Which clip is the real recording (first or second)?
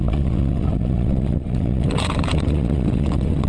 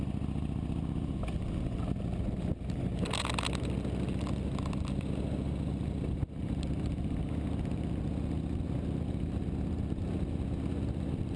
second